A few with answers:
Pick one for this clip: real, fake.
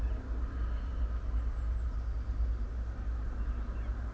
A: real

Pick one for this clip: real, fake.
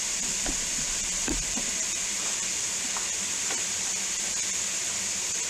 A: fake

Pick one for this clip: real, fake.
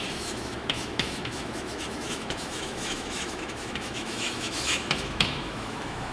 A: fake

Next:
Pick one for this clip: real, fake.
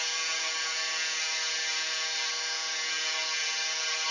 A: real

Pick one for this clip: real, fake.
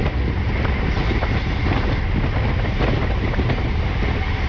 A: real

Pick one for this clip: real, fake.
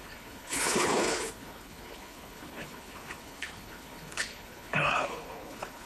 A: fake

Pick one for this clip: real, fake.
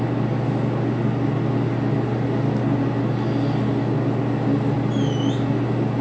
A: real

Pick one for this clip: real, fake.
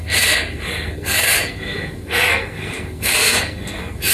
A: fake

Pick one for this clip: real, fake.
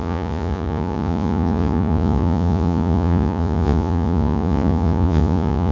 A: fake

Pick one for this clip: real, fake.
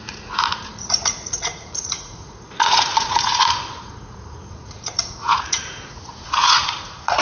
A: fake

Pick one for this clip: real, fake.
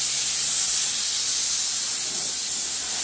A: real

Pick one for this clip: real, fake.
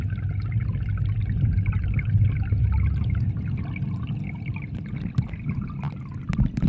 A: real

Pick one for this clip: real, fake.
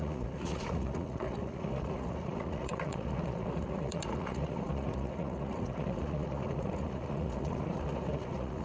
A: fake